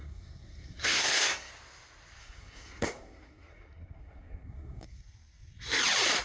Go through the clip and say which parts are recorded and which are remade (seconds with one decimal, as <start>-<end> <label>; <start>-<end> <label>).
0.0-1.5 remade; 1.5-2.2 recorded; 2.2-5.0 remade; 5.0-6.2 recorded